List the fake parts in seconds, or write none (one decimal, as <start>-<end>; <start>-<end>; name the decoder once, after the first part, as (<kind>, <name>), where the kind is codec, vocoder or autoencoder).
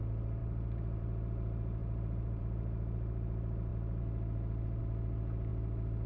0.4-1.0 (vocoder, BigVGAN v2); 1.8-2.4; 5.5-6.1